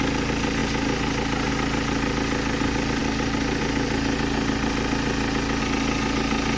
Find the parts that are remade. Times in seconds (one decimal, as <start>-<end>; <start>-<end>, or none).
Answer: none